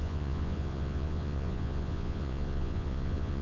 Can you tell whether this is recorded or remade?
remade